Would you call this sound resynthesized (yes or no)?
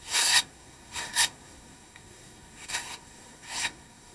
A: yes